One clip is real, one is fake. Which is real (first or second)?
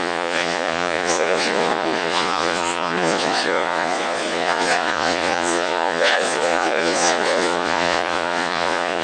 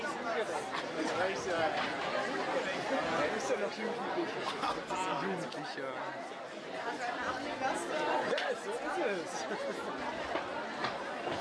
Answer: second